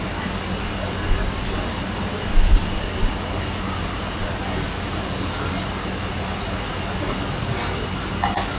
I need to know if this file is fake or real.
real